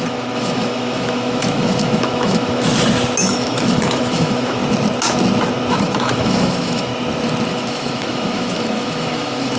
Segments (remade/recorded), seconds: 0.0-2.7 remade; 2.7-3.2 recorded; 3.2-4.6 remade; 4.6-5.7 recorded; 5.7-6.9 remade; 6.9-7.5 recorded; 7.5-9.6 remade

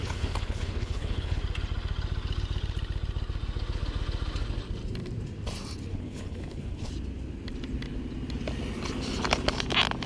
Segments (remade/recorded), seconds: 0.0-1.4 remade; 1.4-5.9 recorded; 5.9-6.9 remade; 6.9-10.1 recorded

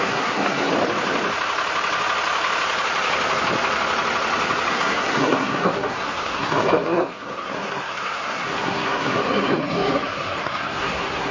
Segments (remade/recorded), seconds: 0.0-0.7 remade; 0.7-4.7 recorded; 4.7-11.3 remade